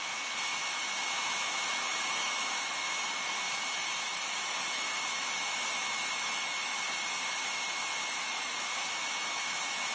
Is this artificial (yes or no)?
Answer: yes